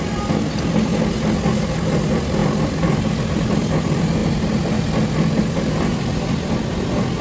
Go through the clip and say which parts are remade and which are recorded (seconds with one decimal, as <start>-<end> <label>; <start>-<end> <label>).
0.0-7.2 recorded